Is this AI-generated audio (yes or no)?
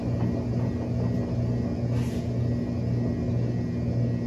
no